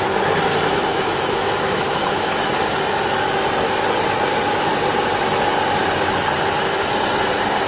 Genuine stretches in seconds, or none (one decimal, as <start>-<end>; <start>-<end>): 0.0-0.9; 2.5-7.7